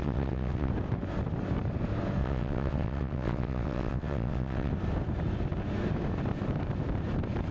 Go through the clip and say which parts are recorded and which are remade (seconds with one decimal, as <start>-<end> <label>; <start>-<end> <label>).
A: 0.0-0.7 remade; 0.7-2.2 recorded; 2.2-4.7 remade; 4.7-7.5 recorded